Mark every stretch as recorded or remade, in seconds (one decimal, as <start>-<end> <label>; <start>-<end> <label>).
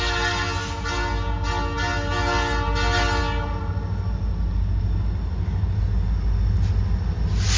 0.0-7.6 recorded